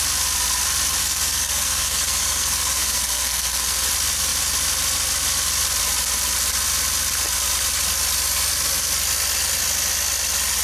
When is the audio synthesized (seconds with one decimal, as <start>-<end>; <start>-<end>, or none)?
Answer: 1.0-3.9